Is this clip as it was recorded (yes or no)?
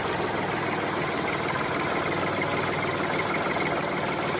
yes